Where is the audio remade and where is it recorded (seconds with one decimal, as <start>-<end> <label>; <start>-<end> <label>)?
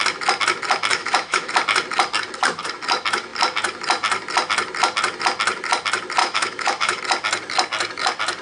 0.0-0.9 recorded; 0.9-1.5 remade; 1.5-6.2 recorded; 6.2-7.0 remade; 7.0-8.4 recorded